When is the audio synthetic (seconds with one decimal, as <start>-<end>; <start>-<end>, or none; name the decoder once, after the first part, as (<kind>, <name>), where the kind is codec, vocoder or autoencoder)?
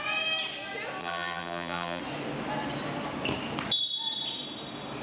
1.0-2.0 (vocoder, BigVGAN v2)